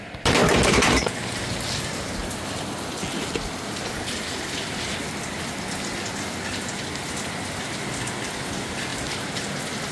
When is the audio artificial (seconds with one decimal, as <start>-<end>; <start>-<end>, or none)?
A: none